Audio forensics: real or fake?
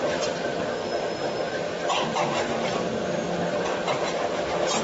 real